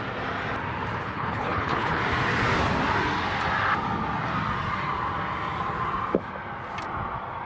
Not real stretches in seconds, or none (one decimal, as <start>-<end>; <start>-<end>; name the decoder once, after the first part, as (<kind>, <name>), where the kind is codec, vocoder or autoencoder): 1.0-2.0 (codec, HILCodec)